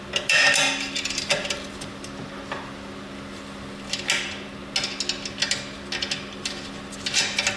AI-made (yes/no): no